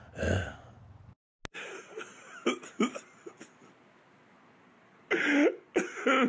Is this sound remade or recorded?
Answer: recorded